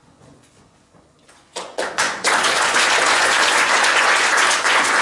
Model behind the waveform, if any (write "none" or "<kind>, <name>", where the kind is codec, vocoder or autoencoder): vocoder, Vocos